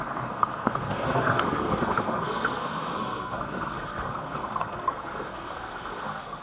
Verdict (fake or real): fake